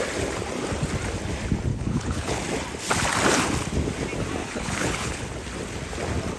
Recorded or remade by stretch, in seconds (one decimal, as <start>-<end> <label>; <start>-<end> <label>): 0.0-1.7 recorded; 1.7-2.4 remade; 2.4-4.4 recorded; 4.4-5.2 remade; 5.2-6.4 recorded